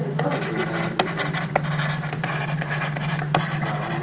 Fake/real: real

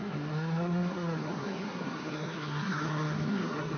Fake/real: fake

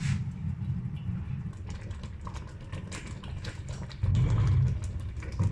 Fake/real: real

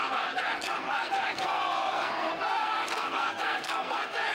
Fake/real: fake